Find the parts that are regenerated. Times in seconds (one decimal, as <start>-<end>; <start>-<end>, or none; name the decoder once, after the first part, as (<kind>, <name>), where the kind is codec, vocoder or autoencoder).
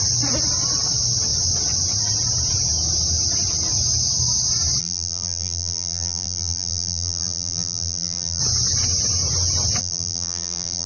4.8-8.4 (vocoder, BigVGAN v2); 9.8-10.9